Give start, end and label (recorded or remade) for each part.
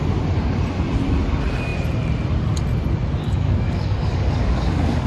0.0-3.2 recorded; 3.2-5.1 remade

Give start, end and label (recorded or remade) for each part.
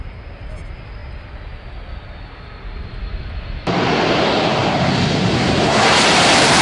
0.0-6.6 recorded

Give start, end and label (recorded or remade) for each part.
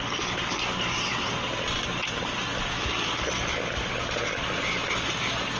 0.0-5.6 recorded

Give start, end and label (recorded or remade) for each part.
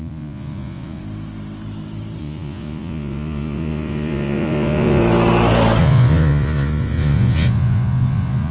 0.0-1.0 remade; 1.0-2.2 recorded; 2.2-5.0 remade; 5.0-5.8 recorded; 5.8-8.5 remade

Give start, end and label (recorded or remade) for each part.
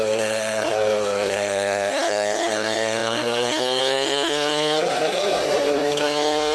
0.0-6.5 remade